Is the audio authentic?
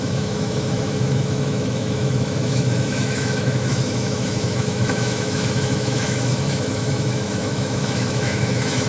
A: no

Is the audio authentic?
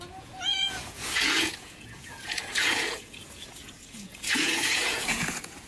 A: no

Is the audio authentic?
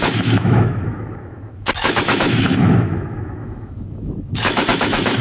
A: no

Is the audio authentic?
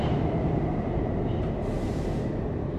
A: no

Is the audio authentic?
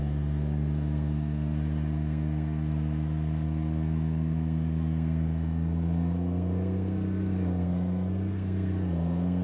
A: no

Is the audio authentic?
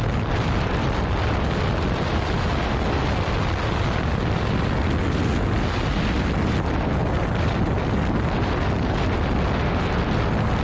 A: yes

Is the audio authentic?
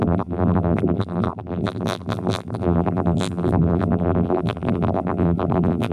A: no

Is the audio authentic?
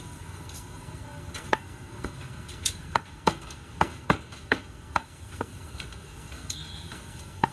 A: no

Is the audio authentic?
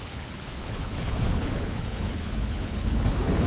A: no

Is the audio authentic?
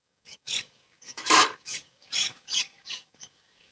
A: no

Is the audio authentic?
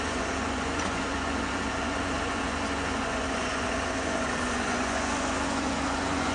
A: no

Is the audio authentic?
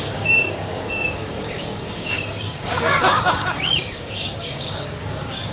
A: no